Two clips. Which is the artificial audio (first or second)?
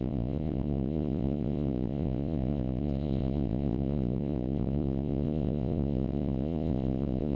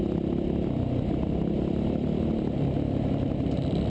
first